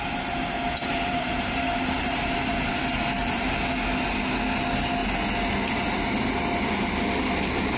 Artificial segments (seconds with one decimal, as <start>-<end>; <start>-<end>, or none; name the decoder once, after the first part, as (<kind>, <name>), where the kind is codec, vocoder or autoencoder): 0.9-2.7 (vocoder, BigVGAN v2)